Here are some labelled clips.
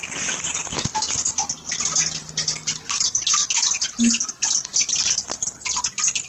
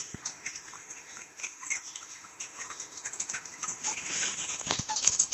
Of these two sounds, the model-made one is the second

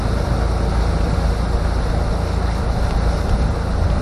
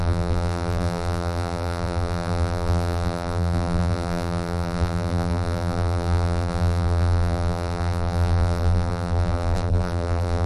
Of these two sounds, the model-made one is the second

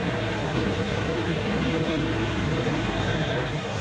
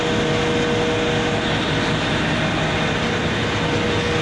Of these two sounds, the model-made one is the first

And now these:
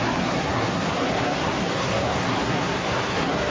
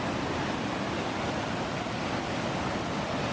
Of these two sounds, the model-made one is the first